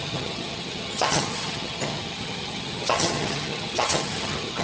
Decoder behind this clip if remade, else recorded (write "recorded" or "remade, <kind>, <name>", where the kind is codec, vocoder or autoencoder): remade, vocoder, HiFi-GAN